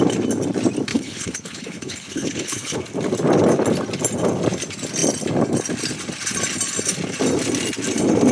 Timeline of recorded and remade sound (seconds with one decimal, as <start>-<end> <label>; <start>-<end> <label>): 0.0-0.9 recorded; 0.9-2.8 remade; 2.8-8.3 recorded